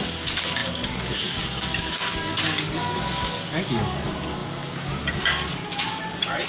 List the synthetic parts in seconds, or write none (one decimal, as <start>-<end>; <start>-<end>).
0.0-6.5